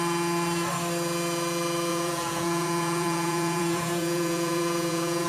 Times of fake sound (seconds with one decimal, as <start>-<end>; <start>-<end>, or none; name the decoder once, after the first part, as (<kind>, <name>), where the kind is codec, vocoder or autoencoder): 1.9-5.3 (vocoder, Vocos)